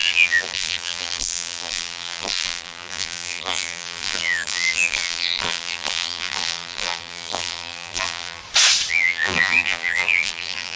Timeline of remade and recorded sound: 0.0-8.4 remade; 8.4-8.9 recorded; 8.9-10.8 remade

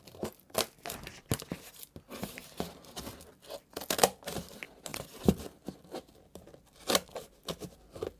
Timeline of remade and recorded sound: 0.0-4.9 recorded; 4.9-5.9 remade; 5.9-8.2 recorded

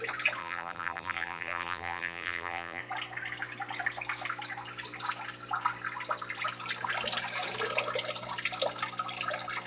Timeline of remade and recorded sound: 0.0-0.4 recorded; 0.4-2.8 remade; 2.8-9.7 recorded

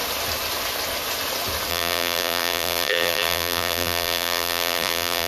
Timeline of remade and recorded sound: 0.0-1.7 recorded; 1.7-5.3 remade

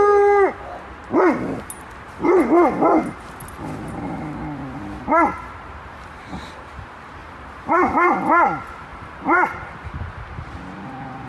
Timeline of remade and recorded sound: 0.0-7.2 recorded; 7.2-8.2 remade; 8.2-8.9 recorded; 8.9-9.7 remade; 9.7-11.3 recorded